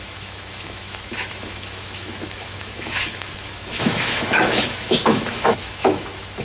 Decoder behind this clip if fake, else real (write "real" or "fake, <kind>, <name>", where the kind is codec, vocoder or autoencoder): fake, autoencoder, DAC-VAE